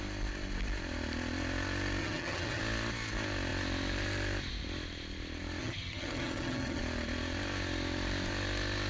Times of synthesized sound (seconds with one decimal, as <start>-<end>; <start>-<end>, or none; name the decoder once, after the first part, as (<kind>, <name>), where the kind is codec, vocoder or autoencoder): 2.0-2.6 (vocoder, HiFi-GAN); 5.6-6.8